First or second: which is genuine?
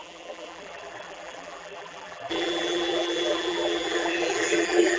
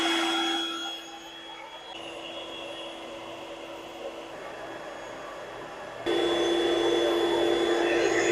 second